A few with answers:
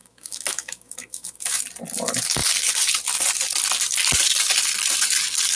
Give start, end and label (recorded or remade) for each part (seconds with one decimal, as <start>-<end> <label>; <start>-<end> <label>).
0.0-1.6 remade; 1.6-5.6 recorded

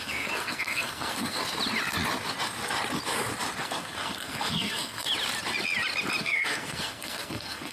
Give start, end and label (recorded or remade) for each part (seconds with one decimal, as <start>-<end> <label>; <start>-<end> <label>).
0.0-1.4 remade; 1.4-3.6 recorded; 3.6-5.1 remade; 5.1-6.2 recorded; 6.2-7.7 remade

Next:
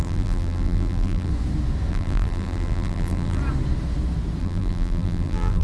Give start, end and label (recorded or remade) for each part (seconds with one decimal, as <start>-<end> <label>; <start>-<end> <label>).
0.0-1.3 remade; 1.3-1.9 recorded; 1.9-3.4 remade; 3.4-4.4 recorded; 4.4-5.6 remade

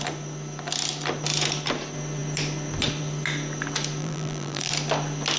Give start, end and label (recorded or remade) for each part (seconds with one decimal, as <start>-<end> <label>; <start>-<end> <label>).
0.0-4.0 recorded; 4.0-4.7 remade; 4.7-5.4 recorded

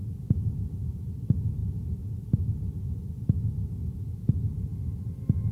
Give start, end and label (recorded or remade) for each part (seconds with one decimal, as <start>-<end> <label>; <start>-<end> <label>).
0.0-5.5 recorded

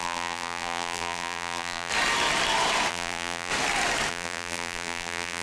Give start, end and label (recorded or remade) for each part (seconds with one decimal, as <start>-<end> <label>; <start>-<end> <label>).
0.0-1.9 remade; 1.9-2.9 recorded; 2.9-3.5 remade; 3.5-4.1 recorded; 4.1-5.4 remade

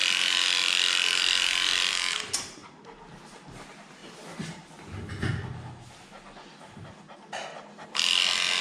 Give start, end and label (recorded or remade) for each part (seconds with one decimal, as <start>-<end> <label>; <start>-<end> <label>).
0.0-1.9 remade; 1.9-2.6 recorded; 2.6-3.2 remade; 3.2-4.0 recorded; 4.0-4.7 remade; 4.7-8.6 recorded

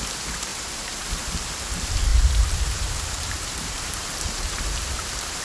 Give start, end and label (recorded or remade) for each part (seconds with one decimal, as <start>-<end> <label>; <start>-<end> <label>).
0.0-0.5 recorded; 0.5-1.3 remade; 1.3-2.1 recorded; 2.1-5.4 remade